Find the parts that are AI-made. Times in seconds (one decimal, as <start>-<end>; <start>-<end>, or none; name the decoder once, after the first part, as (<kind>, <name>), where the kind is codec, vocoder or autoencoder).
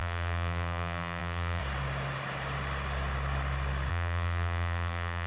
0.0-1.6 (vocoder, BigVGAN v2); 3.9-5.3